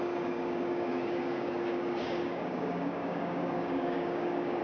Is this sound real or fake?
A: fake